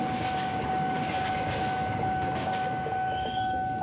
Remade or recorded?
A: remade